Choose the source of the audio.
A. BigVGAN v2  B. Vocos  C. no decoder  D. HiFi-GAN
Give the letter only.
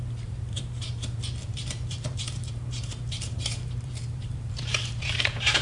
A